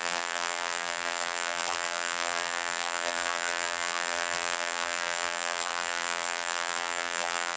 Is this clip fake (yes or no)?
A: yes